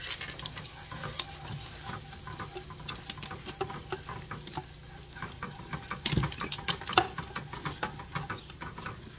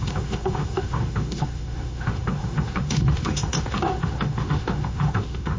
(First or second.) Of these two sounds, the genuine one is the first